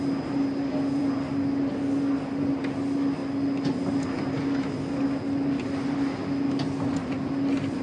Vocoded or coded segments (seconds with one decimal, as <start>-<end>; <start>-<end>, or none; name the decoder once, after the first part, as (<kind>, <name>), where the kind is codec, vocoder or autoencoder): none